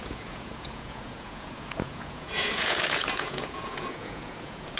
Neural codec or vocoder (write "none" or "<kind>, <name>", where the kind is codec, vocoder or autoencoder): vocoder, Vocos